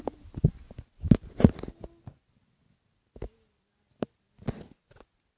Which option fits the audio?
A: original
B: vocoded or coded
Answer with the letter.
A